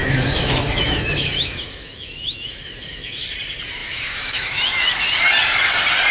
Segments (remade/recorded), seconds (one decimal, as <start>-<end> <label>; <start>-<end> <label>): 0.0-3.2 remade; 3.2-3.8 recorded; 3.8-4.9 remade; 4.9-6.1 recorded